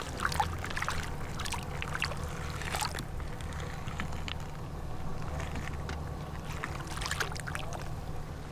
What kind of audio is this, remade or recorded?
recorded